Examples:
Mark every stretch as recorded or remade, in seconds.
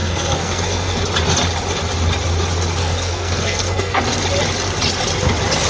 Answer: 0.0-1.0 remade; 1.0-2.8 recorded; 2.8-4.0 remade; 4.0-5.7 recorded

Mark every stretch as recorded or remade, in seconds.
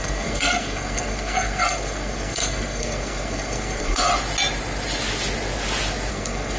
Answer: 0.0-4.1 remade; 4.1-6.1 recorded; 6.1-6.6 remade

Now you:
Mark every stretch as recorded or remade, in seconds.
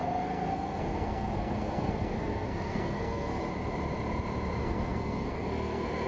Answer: 0.0-3.4 remade; 3.4-4.6 recorded; 4.6-6.1 remade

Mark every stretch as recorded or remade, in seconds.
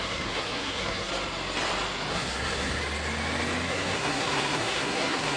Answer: 0.0-1.1 remade; 1.1-2.1 recorded; 2.1-2.8 remade; 2.8-3.7 recorded; 3.7-5.4 remade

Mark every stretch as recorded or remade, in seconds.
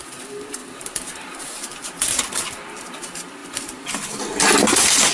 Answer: 0.0-5.1 recorded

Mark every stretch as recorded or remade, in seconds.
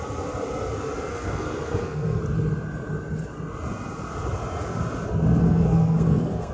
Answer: 0.0-1.1 recorded; 1.1-2.2 remade; 2.2-5.4 recorded; 5.4-6.5 remade